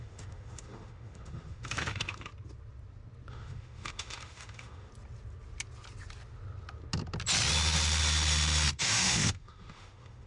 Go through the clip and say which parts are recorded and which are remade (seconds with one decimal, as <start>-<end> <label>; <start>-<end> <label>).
0.0-2.3 remade; 2.3-3.3 recorded; 3.3-4.9 remade; 4.9-8.8 recorded; 8.8-10.3 remade